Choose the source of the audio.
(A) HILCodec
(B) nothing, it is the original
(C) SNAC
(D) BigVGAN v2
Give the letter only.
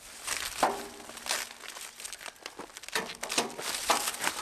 B